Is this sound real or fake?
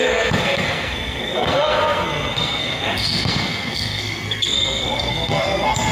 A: fake